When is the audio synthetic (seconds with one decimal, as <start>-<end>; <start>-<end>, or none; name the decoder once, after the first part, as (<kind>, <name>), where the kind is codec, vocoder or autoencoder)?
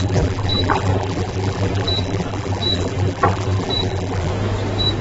0.0-4.3 (vocoder, BigVGAN v2)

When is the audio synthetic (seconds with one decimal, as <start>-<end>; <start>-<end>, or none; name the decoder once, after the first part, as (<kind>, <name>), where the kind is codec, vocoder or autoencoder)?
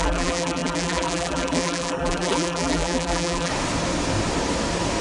0.0-3.5 (vocoder, BigVGAN v2)